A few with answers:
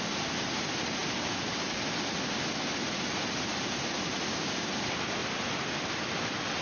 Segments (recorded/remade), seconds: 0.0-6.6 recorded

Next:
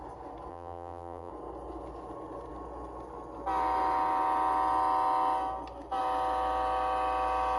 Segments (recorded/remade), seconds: 0.0-0.5 recorded; 0.5-1.3 remade; 1.3-7.6 recorded

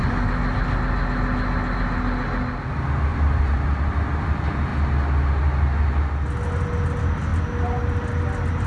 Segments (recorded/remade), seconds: 0.0-3.1 recorded; 3.1-3.7 remade; 3.7-8.7 recorded

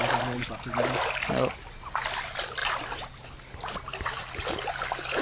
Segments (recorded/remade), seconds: 0.0-2.6 recorded; 2.6-3.5 remade; 3.5-5.2 recorded